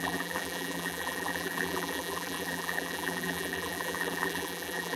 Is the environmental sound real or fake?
fake